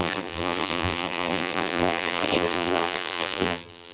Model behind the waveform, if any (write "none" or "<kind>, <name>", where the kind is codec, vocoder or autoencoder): vocoder, BigVGAN v2